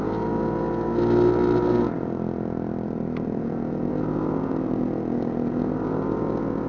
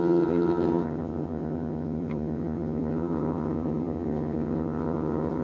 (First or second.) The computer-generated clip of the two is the second